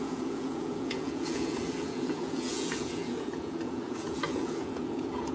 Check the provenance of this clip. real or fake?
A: fake